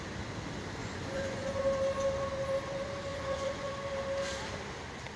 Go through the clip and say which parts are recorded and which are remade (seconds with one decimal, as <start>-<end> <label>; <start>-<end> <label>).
0.0-0.8 recorded; 0.8-1.6 remade; 1.6-3.1 recorded; 3.1-3.7 remade; 3.7-5.2 recorded